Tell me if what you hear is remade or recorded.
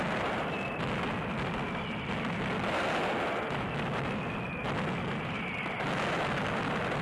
recorded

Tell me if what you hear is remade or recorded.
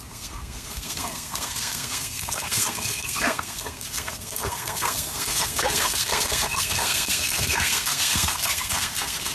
remade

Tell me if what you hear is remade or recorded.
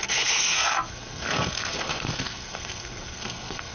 remade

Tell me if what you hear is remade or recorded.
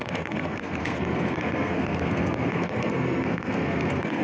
remade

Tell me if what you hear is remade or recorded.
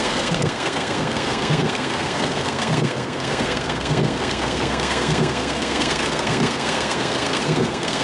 remade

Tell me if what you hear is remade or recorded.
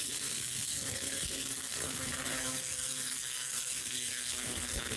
remade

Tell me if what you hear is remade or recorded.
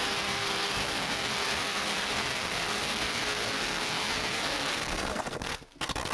remade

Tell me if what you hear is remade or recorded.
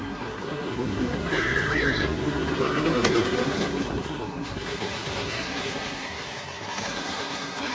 remade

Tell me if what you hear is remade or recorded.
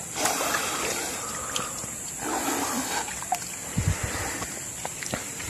recorded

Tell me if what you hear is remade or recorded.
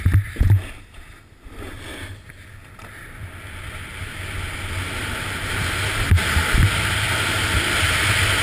recorded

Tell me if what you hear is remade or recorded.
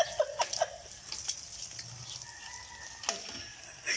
recorded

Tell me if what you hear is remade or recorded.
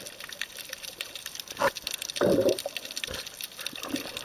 recorded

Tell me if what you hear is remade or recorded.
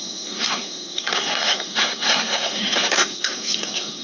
remade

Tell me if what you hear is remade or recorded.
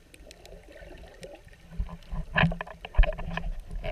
recorded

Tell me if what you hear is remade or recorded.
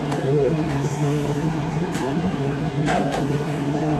remade